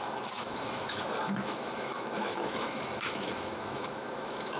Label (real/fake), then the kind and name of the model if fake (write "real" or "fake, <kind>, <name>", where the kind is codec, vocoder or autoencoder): fake, autoencoder, DAC-VAE